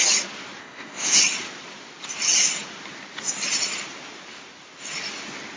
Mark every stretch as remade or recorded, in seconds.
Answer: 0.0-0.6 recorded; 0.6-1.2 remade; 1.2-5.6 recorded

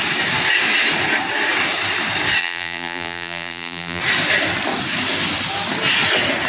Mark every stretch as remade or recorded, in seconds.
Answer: 0.0-2.4 recorded; 2.4-4.0 remade; 4.0-6.5 recorded